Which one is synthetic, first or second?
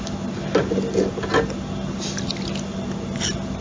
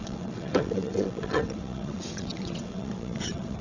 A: second